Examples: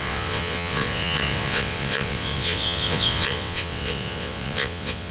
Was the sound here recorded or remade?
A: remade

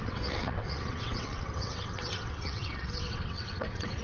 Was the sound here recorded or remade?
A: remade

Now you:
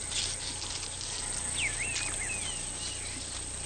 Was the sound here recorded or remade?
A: recorded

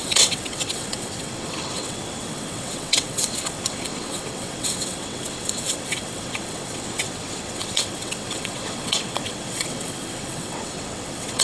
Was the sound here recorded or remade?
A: remade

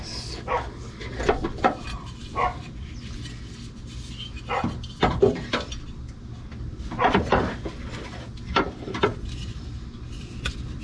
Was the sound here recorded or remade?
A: recorded